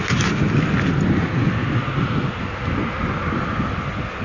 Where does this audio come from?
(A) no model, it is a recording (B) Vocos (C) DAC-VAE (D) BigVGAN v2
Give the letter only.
A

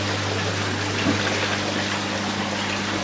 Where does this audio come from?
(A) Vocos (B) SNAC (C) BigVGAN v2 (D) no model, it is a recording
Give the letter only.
D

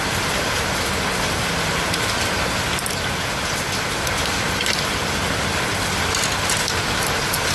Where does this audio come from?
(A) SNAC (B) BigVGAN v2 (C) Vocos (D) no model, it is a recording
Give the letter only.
D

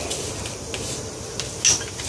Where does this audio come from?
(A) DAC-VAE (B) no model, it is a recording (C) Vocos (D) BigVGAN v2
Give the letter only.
B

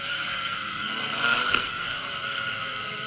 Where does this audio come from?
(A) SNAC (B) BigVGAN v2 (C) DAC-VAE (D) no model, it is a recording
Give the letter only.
A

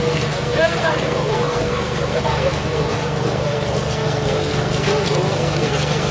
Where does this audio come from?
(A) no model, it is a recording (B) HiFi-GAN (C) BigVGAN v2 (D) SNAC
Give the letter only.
D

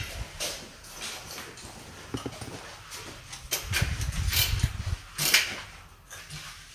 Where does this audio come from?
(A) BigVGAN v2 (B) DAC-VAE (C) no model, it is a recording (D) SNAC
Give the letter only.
C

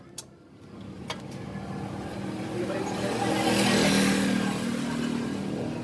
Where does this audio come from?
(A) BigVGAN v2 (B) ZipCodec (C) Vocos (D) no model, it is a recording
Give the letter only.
D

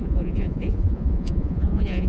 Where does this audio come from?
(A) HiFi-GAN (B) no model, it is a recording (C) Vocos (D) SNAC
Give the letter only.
C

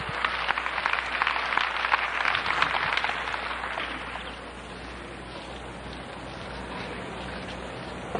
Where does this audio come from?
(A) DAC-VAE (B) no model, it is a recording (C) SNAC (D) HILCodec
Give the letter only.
B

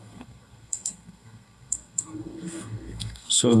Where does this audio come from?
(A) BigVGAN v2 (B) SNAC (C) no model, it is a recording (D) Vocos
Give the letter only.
B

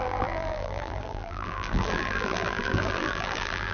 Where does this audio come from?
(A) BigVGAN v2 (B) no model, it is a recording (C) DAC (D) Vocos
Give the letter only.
A